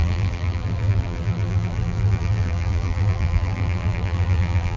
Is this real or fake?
fake